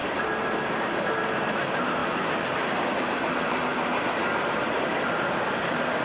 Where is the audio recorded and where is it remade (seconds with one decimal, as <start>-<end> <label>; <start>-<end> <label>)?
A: 0.0-2.0 remade; 2.0-2.5 recorded; 2.5-3.7 remade; 3.7-4.4 recorded; 4.4-6.0 remade